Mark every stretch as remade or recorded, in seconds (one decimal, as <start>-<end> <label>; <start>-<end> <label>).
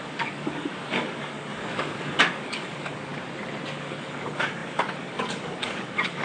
0.0-3.1 remade; 3.1-3.7 recorded; 3.7-6.2 remade